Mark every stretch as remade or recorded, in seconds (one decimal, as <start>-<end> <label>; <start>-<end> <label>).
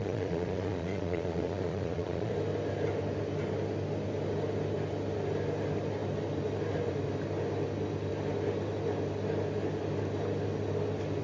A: 0.0-2.3 remade; 2.3-11.2 recorded